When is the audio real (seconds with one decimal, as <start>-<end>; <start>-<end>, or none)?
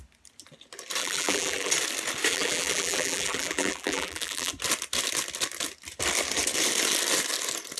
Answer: 0.0-1.0; 1.7-2.3; 4.5-7.8